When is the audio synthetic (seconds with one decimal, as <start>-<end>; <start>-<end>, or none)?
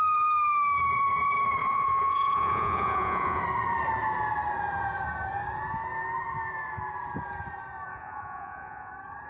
1.6-3.4; 7.9-8.9